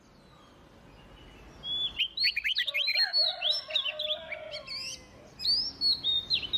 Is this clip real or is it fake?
real